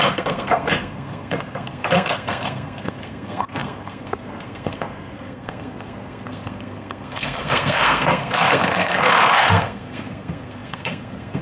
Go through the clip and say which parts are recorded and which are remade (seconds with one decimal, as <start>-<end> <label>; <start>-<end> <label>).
0.0-11.4 remade